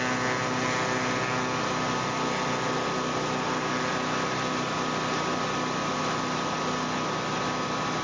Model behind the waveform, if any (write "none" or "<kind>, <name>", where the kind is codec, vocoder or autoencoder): none